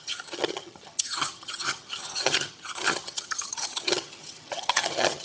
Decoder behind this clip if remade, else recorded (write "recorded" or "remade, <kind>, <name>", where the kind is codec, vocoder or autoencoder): remade, vocoder, HiFi-GAN